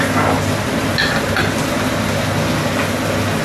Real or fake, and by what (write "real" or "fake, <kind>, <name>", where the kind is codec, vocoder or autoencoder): real